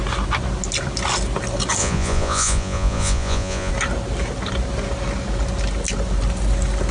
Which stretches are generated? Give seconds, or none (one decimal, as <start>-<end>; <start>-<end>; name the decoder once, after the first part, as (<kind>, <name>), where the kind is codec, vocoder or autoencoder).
1.8-3.7 (vocoder, Vocos)